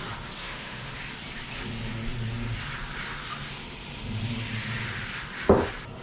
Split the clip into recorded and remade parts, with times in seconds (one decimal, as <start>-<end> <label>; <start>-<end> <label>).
0.0-0.4 recorded; 0.4-1.0 remade; 1.0-6.0 recorded